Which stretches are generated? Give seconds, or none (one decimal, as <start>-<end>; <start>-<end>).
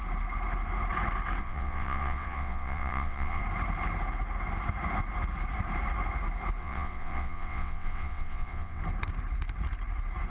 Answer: 1.4-3.4; 6.6-8.8